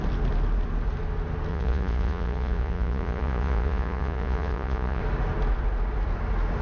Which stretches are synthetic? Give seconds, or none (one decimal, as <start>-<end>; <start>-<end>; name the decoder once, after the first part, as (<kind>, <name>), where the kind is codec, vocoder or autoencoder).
1.5-5.0 (vocoder, Vocos)

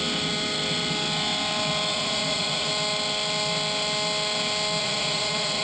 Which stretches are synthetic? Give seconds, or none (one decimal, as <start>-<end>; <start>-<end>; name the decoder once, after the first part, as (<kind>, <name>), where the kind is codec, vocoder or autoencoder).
1.9-2.7 (vocoder, Vocos); 4.8-5.6